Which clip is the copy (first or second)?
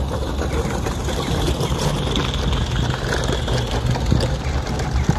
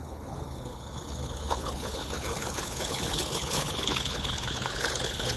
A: second